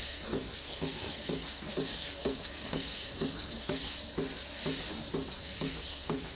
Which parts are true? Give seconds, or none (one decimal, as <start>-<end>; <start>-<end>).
3.8-5.3